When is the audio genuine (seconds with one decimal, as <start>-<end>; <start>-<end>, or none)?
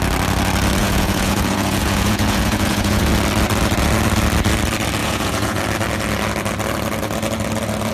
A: 0.0-0.8; 3.1-5.0; 5.6-7.9